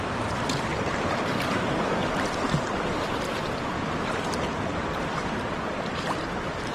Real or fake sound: fake